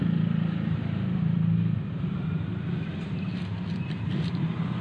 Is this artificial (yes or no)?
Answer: yes